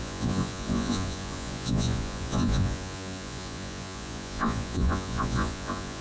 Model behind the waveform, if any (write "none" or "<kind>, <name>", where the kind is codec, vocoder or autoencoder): vocoder, Vocos